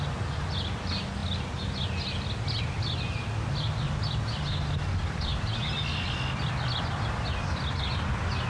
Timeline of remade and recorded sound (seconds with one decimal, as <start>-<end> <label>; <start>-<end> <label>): 0.0-8.5 recorded